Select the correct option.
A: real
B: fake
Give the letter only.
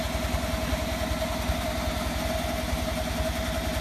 A